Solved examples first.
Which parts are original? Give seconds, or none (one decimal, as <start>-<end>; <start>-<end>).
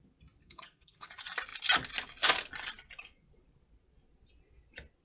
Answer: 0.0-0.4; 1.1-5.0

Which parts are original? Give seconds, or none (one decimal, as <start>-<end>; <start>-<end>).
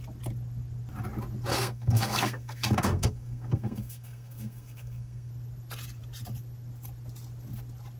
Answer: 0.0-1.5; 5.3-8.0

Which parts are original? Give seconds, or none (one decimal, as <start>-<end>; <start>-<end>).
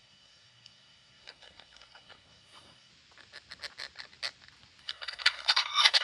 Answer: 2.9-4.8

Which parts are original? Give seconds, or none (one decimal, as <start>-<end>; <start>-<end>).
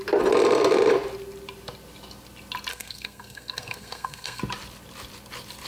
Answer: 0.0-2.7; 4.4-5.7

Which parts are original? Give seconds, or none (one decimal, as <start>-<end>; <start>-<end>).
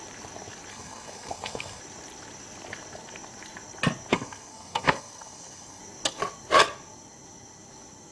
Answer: 0.0-0.7; 1.8-4.1; 5.8-8.1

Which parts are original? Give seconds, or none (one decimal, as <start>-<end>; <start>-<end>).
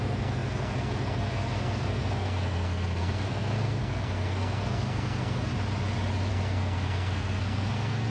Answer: 5.5-6.3